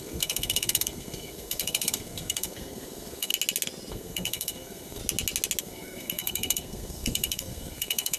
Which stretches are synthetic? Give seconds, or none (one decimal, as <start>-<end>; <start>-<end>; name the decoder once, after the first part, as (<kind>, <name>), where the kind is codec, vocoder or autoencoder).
0.0-3.3 (codec, SNAC); 3.9-5.0; 5.6-8.2